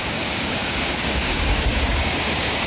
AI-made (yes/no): yes